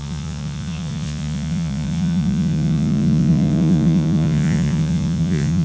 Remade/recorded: remade